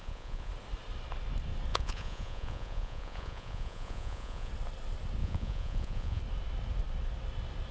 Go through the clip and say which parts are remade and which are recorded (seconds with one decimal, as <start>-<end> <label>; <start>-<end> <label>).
0.0-0.5 remade; 0.5-1.7 recorded; 1.7-4.5 remade; 4.5-5.2 recorded; 5.2-6.2 remade; 6.2-7.7 recorded